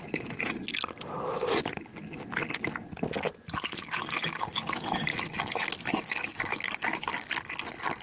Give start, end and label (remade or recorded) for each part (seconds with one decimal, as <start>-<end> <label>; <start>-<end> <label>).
0.0-5.1 recorded; 5.1-7.3 remade; 7.3-8.0 recorded